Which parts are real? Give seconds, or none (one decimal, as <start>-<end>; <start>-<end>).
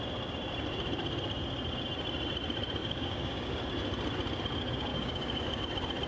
0.0-2.8; 3.6-4.9; 5.6-6.1